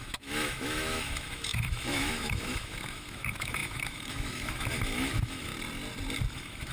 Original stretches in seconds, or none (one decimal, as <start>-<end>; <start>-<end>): 5.5-6.3